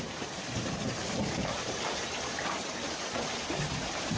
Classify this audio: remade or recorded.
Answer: remade